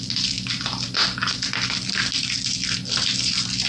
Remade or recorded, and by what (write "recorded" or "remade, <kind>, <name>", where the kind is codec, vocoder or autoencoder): recorded